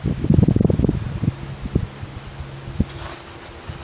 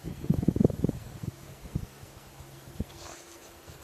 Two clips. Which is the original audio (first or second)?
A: first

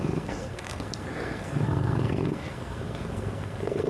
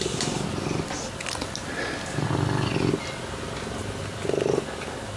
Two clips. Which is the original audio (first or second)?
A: second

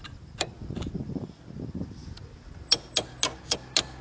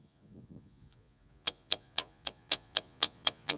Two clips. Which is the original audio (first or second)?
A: first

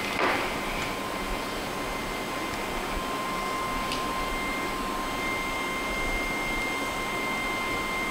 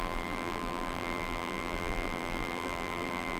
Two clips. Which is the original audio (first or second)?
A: first